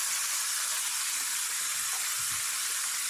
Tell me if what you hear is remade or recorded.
recorded